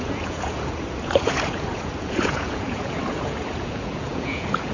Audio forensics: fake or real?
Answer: fake